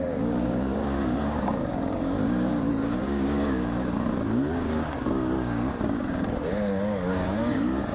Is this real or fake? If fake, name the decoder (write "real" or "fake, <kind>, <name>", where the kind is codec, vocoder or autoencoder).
fake, codec, DAC